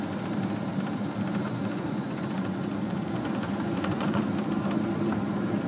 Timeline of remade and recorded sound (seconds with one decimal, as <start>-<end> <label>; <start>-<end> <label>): 0.0-1.4 recorded; 1.4-4.2 remade; 4.2-5.7 recorded